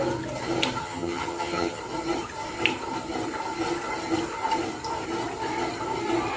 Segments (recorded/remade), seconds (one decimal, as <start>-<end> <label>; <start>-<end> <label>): 0.0-0.8 recorded; 0.8-1.8 remade; 1.8-6.4 recorded